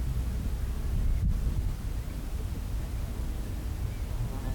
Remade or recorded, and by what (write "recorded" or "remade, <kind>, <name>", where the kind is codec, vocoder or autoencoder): recorded